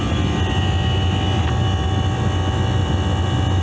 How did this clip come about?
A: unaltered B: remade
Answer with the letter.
A